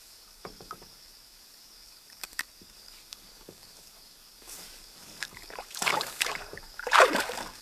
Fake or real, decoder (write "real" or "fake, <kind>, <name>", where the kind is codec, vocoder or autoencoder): fake, codec, DAC